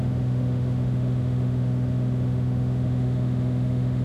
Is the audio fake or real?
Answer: fake